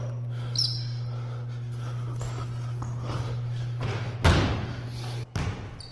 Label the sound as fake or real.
real